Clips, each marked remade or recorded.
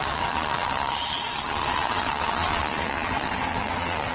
remade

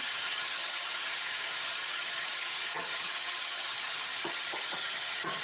remade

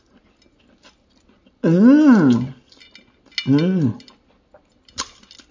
recorded